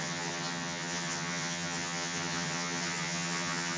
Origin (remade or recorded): remade